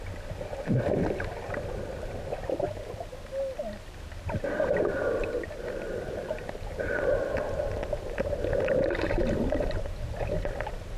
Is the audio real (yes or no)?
yes